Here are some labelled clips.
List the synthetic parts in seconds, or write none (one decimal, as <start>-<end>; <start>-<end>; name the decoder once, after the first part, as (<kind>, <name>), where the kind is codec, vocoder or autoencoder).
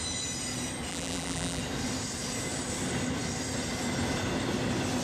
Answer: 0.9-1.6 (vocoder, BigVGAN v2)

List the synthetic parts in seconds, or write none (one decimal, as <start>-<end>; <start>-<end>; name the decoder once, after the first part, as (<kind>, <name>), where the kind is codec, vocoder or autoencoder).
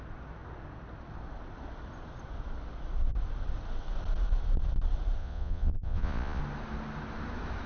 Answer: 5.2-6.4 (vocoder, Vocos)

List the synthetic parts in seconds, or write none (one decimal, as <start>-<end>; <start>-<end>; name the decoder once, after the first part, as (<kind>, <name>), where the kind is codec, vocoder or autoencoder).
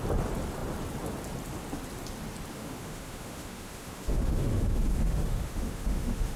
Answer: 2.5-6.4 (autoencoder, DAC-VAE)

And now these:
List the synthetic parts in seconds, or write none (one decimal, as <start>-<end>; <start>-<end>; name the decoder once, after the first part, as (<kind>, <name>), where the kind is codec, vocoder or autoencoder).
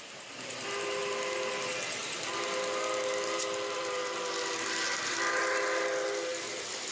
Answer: none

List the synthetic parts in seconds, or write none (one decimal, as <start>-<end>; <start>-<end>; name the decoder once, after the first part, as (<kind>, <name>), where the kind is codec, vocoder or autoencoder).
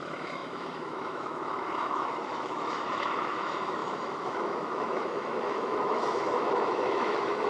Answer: 0.0-7.5 (autoencoder, DAC-VAE)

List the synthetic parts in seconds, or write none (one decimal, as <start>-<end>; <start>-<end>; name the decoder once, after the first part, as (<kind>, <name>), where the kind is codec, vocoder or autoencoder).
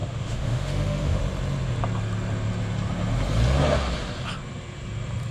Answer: 0.0-1.2 (autoencoder, DAC-VAE)